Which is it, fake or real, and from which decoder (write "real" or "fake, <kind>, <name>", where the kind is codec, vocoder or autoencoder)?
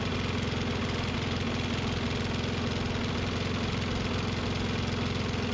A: real